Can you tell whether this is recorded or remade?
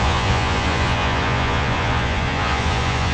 remade